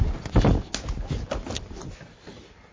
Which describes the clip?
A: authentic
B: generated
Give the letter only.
A